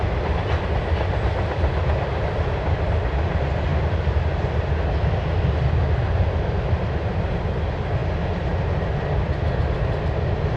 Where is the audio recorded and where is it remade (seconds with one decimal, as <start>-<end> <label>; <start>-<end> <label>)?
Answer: 0.0-10.6 recorded